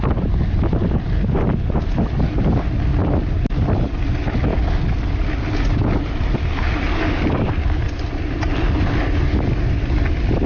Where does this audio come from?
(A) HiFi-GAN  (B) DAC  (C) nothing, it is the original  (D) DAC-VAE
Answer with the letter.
C